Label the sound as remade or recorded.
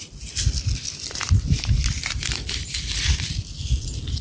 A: remade